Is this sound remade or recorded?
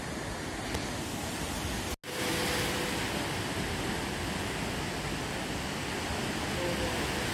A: recorded